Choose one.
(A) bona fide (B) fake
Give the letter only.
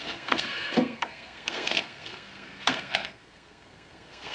B